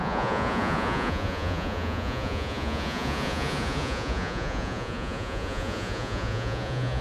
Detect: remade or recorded remade